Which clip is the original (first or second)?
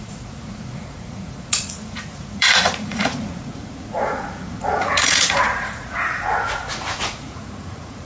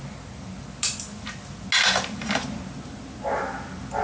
second